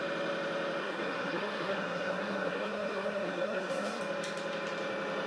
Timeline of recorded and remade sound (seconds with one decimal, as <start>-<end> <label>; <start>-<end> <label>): 0.0-0.8 recorded; 0.8-4.0 remade; 4.0-5.3 recorded